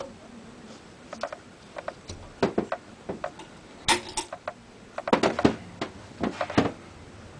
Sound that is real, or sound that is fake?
real